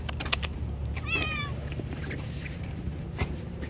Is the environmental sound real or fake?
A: fake